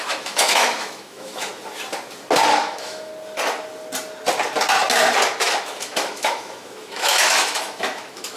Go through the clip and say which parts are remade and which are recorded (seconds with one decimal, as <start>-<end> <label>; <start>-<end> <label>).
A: 0.0-1.5 remade; 1.5-2.6 recorded; 2.6-3.1 remade; 3.1-5.4 recorded; 5.4-8.4 remade